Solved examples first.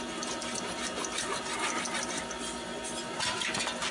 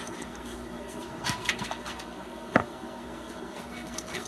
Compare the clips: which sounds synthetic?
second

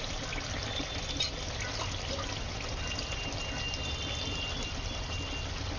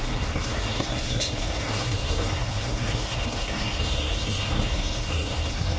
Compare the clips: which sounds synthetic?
second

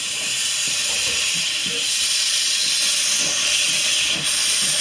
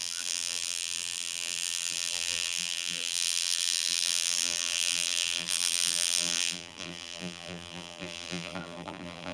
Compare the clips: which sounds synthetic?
second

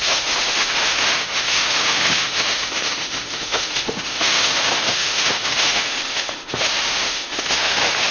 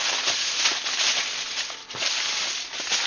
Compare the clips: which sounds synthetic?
first